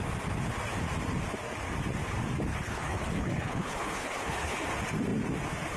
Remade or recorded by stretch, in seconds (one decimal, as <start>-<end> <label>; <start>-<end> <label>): 0.0-2.5 recorded; 2.5-4.6 remade; 4.6-5.8 recorded